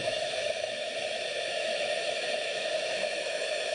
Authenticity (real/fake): fake